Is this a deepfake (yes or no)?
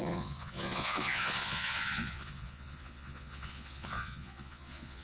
yes